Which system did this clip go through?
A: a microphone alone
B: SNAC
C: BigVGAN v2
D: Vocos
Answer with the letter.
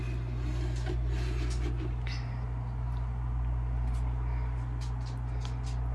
A